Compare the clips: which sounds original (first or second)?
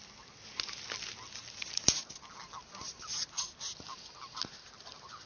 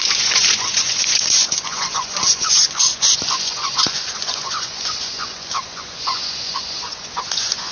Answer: first